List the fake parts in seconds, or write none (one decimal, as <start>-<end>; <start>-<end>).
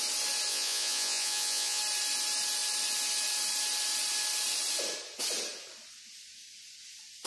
0.5-1.8